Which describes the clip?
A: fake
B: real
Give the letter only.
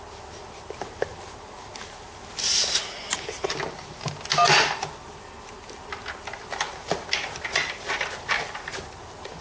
B